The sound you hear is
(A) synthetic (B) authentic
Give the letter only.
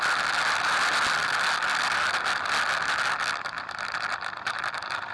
B